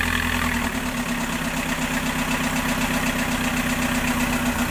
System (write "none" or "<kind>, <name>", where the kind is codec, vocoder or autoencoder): none